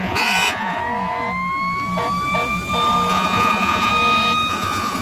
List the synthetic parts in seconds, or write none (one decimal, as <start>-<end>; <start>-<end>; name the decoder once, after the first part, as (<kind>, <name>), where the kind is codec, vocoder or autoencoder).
0.0-0.8 (vocoder, Vocos); 3.1-3.9; 4.5-5.0